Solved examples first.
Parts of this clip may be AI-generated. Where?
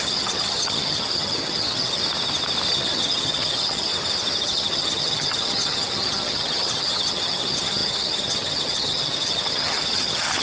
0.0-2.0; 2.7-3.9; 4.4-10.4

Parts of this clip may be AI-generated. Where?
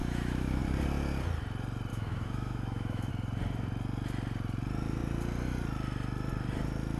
0.0-0.6; 1.9-3.1